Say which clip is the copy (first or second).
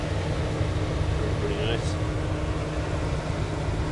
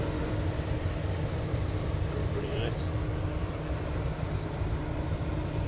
second